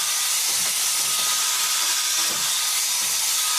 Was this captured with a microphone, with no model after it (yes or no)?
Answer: yes